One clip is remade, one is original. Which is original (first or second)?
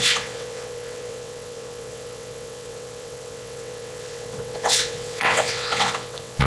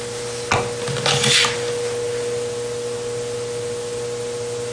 second